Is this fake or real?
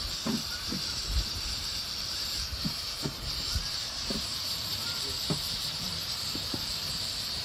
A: fake